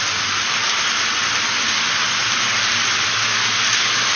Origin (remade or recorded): recorded